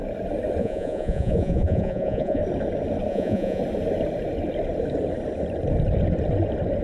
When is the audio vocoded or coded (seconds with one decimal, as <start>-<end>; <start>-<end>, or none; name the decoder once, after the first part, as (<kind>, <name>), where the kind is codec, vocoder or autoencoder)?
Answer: 0.6-2.4 (vocoder, Vocos); 3.1-3.6

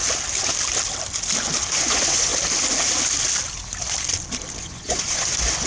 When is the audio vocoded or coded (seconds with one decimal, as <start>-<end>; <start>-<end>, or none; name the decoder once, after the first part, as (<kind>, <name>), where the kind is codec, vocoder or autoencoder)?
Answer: 1.7-2.3 (vocoder, Vocos); 4.6-5.7

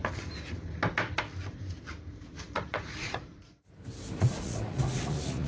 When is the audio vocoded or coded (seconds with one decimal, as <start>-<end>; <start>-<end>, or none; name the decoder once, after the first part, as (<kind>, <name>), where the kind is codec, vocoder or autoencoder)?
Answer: 2.4-3.5 (vocoder, Vocos); 4.2-5.5

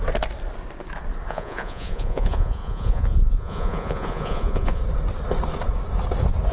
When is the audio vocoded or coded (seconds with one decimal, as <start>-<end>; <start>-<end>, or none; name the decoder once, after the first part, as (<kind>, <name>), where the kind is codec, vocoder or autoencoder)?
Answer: 1.3-4.8 (vocoder, Vocos)

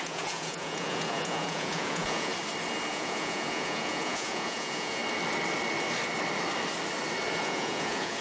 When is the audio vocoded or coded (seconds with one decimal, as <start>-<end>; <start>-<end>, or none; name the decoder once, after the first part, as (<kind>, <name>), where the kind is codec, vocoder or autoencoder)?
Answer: 0.0-2.3 (vocoder, Vocos); 2.9-5.0; 7.4-8.2

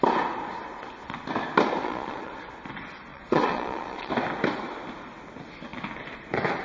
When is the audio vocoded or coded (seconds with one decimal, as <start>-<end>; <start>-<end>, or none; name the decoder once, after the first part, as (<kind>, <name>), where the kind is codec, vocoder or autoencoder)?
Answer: 1.8-2.3 (vocoder, Vocos); 3.1-4.1

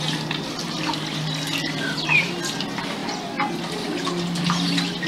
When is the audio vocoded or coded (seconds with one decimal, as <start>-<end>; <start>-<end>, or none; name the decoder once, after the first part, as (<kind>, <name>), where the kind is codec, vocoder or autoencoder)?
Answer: none